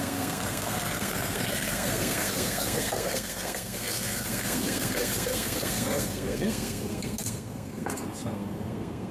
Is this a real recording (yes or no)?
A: no